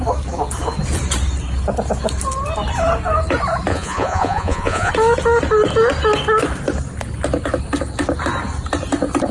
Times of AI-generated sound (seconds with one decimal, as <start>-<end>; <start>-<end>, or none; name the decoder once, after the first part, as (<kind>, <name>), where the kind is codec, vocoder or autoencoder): 3.7-4.9 (vocoder, Vocos)